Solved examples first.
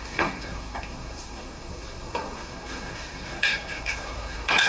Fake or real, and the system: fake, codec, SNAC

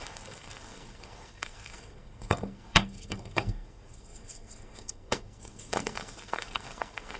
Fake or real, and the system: fake, codec, SNAC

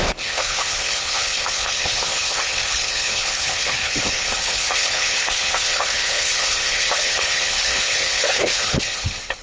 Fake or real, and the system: fake, codec, HILCodec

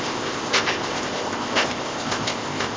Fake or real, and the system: fake, codec, ZipCodec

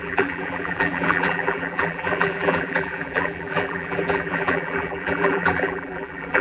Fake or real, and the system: fake, vocoder, BigVGAN v2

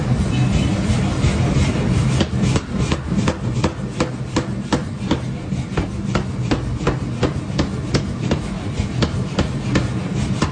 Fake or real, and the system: real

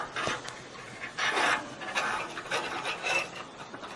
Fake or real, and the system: real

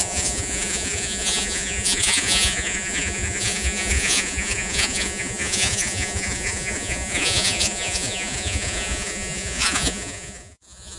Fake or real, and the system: fake, vocoder, Vocos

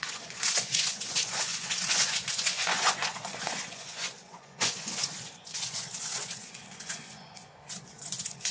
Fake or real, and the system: fake, vocoder, Vocos